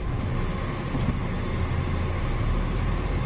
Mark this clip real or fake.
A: real